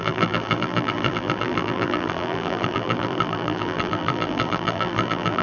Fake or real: fake